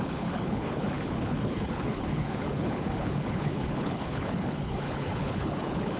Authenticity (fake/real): fake